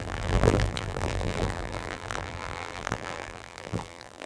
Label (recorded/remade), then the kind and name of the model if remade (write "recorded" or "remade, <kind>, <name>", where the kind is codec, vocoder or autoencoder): remade, vocoder, BigVGAN v2